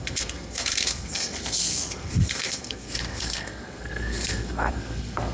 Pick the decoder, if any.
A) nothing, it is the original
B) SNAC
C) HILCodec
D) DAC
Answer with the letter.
B